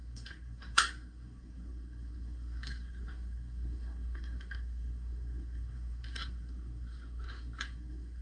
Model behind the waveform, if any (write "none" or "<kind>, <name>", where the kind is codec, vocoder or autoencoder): codec, SNAC